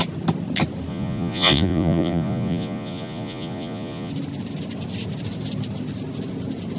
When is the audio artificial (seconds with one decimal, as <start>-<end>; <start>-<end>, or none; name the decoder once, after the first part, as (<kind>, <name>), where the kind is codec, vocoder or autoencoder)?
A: 0.9-4.1 (vocoder, Vocos)